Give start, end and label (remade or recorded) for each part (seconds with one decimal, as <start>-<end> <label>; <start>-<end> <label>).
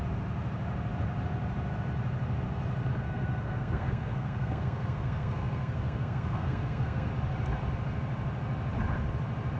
0.0-2.9 recorded; 2.9-7.1 remade; 7.1-9.6 recorded